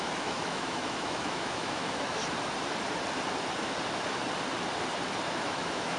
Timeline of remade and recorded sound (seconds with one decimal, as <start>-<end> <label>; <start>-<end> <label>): 0.0-2.2 remade; 2.2-5.3 recorded; 5.3-6.0 remade